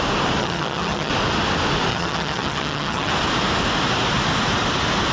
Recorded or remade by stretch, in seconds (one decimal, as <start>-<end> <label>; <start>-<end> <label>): 0.0-0.4 recorded; 0.4-1.1 remade; 1.1-1.9 recorded; 1.9-3.1 remade; 3.1-5.1 recorded